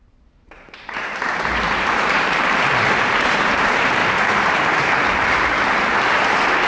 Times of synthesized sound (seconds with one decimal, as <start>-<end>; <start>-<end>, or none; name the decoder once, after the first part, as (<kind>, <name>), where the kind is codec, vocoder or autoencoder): 0.0-4.0 (vocoder, BigVGAN v2); 4.6-6.7